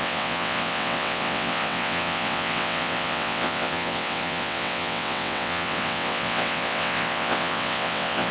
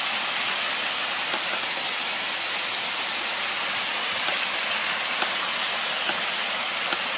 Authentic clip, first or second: second